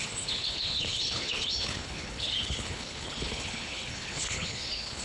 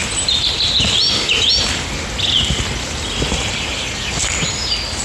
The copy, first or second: first